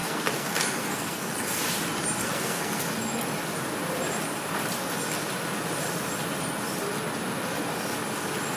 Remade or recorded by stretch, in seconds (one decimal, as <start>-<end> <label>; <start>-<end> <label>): 0.0-1.6 remade; 1.6-2.2 recorded; 2.2-2.8 remade; 2.8-8.6 recorded